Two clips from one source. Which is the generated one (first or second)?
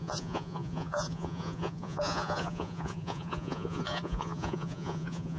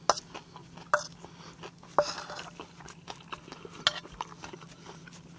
first